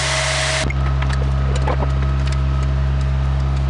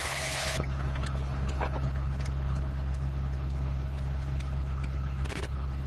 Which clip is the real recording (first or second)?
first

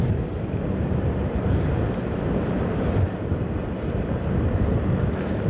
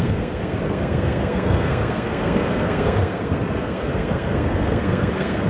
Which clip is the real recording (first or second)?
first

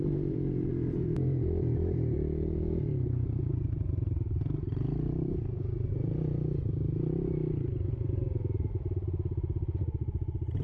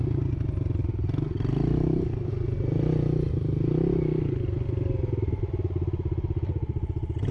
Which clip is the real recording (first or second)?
second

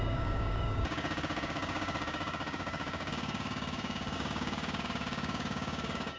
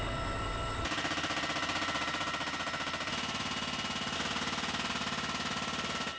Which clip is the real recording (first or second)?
second